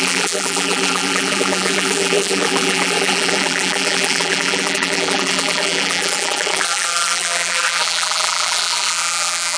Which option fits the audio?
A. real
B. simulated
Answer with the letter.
B